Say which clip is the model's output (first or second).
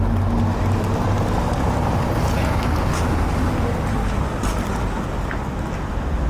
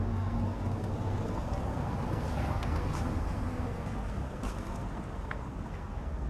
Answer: second